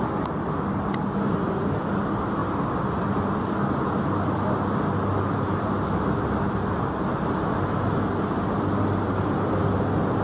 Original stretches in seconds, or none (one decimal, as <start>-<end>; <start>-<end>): 0.0-10.2